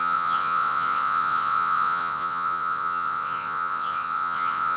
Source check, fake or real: fake